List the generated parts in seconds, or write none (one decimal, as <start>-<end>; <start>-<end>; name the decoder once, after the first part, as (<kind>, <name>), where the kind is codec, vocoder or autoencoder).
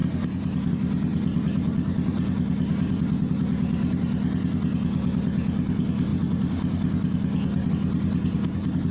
none